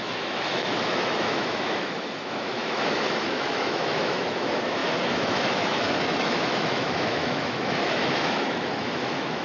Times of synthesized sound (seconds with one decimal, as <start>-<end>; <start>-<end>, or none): 0.0-9.4